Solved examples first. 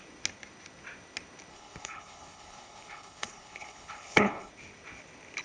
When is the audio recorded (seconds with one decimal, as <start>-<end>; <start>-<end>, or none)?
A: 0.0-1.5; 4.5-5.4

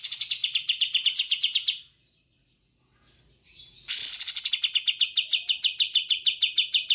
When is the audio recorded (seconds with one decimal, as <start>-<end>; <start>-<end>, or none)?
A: 0.0-6.9

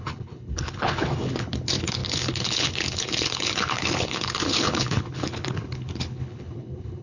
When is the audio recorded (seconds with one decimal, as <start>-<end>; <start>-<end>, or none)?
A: none

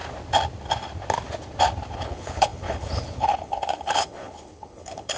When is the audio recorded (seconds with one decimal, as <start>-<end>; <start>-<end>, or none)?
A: 0.0-1.9

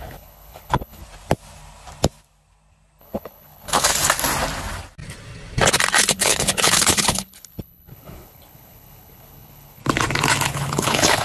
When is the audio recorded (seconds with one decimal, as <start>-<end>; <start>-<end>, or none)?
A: 1.0-3.0; 3.9-6.1; 9.8-10.5

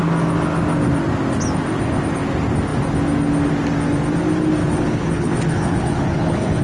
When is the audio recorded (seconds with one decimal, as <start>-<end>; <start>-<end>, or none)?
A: 0.0-4.6